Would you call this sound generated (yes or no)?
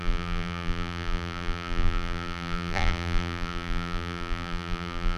yes